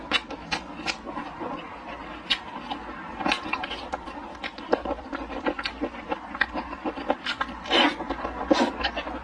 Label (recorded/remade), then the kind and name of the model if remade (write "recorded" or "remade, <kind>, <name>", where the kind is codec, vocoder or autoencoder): recorded